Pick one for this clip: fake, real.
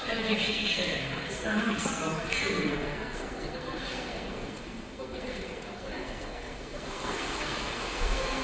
fake